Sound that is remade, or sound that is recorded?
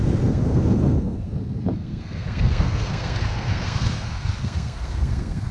remade